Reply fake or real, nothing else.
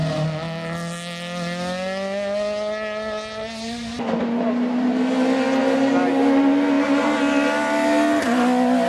real